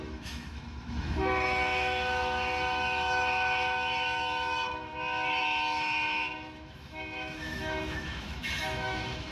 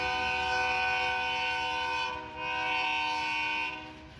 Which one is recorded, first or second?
second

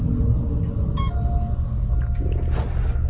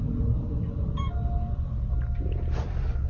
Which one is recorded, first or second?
first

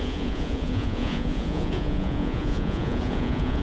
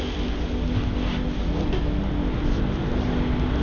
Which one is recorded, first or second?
second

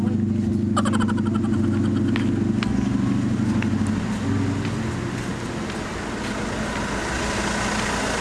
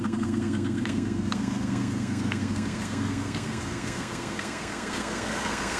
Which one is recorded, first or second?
first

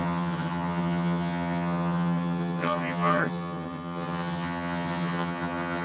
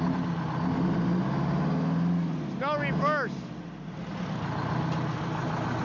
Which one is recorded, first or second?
second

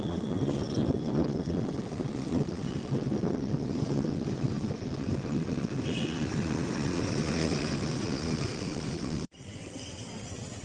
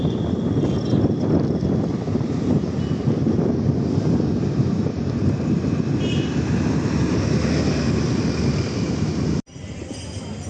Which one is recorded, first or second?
second